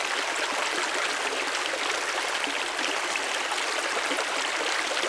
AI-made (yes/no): no